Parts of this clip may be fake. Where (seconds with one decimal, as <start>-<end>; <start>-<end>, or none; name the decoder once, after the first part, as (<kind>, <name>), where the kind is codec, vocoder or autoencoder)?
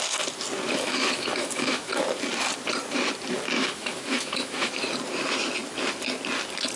0.9-1.9 (autoencoder, DAC-VAE); 3.6-4.7